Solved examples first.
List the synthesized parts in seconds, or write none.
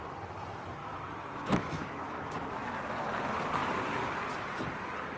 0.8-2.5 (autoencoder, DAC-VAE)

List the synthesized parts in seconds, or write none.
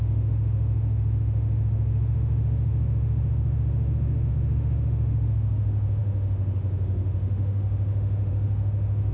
0.0-9.1 (autoencoder, DAC-VAE)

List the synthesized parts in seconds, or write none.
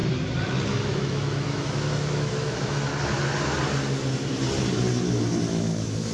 0.7-2.9 (autoencoder, DAC-VAE); 5.4-6.1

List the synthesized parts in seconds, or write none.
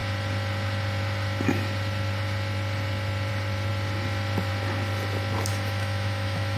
5.5-6.6 (autoencoder, DAC-VAE)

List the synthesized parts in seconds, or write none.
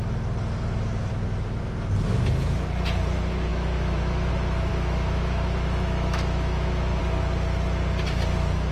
1.1-1.6 (autoencoder, DAC-VAE); 3.5-4.3; 4.7-7.0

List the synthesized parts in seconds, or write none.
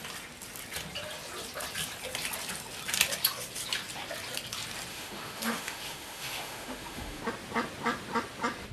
4.9-7.2 (autoencoder, DAC-VAE)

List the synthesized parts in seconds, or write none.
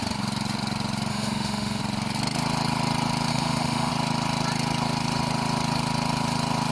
1.1-1.8 (autoencoder, DAC-VAE); 3.3-3.9